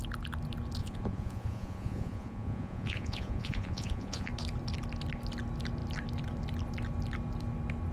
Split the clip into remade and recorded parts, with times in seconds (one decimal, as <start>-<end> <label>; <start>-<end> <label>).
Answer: 0.0-0.8 recorded; 0.8-4.3 remade; 4.3-7.9 recorded